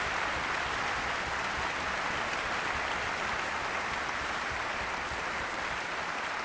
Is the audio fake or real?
real